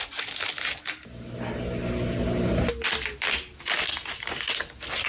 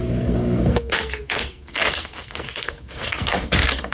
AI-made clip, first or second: second